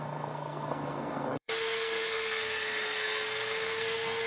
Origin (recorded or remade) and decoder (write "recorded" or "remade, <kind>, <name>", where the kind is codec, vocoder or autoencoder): remade, codec, SNAC